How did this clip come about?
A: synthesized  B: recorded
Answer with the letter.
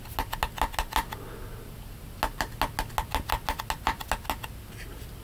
B